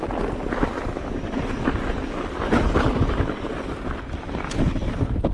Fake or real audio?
real